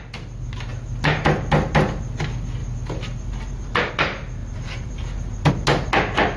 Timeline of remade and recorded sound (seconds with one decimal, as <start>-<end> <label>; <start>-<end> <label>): 0.0-4.4 recorded; 4.4-5.5 remade; 5.5-6.4 recorded